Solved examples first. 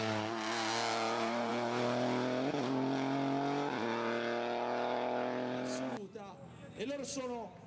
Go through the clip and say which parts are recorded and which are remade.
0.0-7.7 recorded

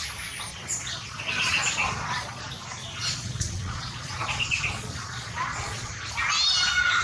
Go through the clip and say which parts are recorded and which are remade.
0.0-0.5 recorded; 0.5-2.4 remade; 2.4-2.8 recorded; 2.8-5.9 remade; 5.9-7.0 recorded

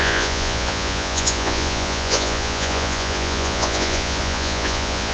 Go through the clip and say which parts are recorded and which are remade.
0.0-5.1 remade